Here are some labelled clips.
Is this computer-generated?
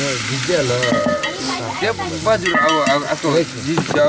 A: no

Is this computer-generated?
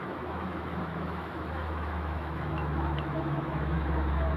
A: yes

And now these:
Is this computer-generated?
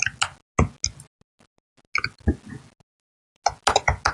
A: no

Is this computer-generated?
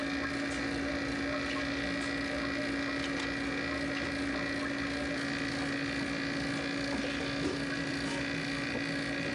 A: no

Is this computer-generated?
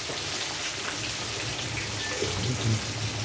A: no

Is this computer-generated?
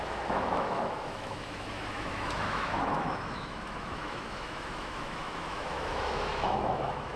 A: yes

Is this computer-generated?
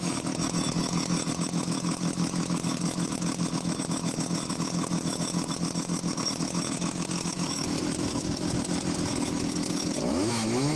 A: yes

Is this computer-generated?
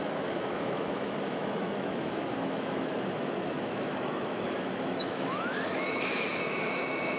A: yes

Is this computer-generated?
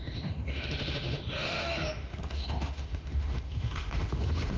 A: yes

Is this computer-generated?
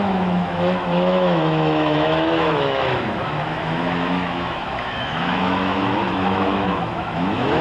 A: yes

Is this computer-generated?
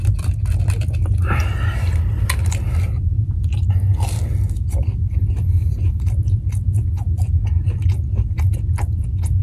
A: no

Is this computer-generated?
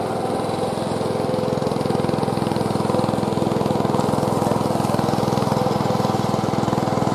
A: no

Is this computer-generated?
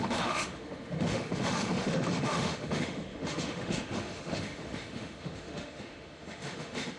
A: yes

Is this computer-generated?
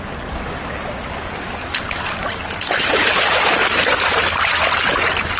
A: no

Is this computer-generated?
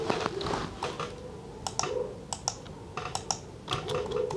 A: no